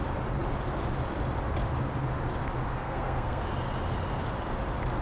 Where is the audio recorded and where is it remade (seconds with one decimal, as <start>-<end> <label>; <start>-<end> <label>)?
0.0-2.7 recorded; 2.7-3.4 remade; 3.4-5.0 recorded